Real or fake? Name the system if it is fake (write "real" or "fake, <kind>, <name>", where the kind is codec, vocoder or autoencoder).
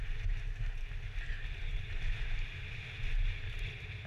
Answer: real